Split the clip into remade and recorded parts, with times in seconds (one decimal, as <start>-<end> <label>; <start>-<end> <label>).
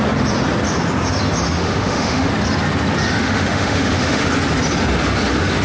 0.0-1.6 recorded; 1.6-2.3 remade; 2.3-3.2 recorded; 3.2-4.3 remade; 4.3-5.6 recorded